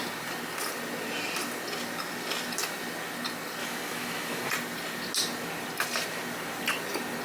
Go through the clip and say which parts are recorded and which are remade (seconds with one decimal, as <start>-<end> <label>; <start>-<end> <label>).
0.0-3.6 recorded; 3.6-4.5 remade; 4.5-7.2 recorded